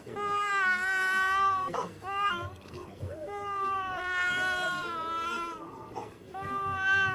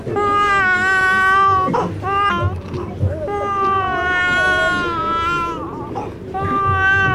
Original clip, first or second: second